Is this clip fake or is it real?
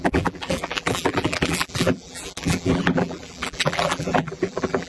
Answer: fake